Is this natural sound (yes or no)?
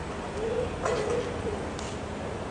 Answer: yes